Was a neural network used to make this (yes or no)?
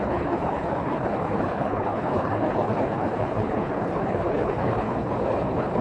yes